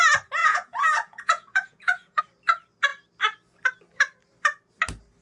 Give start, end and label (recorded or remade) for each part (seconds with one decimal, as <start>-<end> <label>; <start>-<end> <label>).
0.0-0.4 recorded; 0.4-2.2 remade; 2.2-5.2 recorded